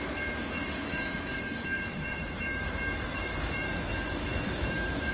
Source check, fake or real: fake